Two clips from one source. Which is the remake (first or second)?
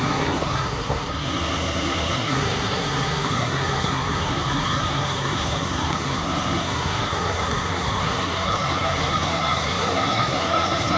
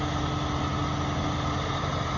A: first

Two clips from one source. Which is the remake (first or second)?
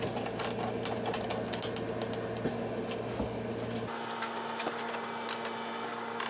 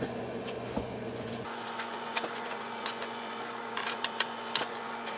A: second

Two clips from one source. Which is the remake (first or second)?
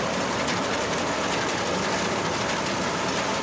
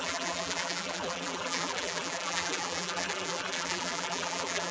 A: second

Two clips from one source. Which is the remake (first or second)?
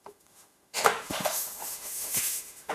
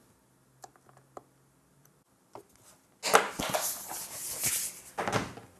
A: first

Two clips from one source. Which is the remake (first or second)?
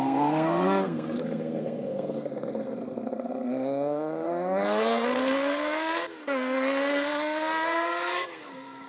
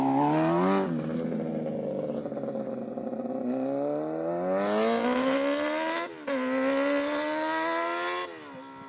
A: first